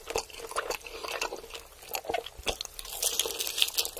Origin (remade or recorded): recorded